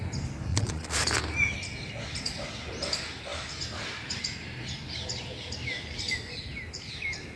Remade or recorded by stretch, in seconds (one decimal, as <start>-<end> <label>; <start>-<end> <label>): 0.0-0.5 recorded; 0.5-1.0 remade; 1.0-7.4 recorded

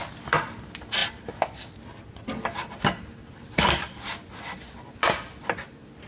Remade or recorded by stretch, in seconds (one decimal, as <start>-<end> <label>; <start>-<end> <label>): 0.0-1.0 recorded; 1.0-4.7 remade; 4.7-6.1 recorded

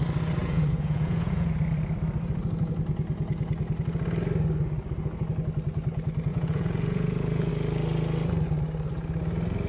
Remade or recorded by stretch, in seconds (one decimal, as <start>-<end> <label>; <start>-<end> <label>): 0.0-0.4 recorded; 0.4-1.5 remade; 1.5-6.3 recorded; 6.3-7.5 remade; 7.5-9.7 recorded